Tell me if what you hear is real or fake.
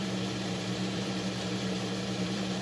fake